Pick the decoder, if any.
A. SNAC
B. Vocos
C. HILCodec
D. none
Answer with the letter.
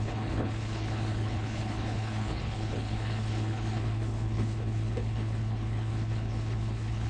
C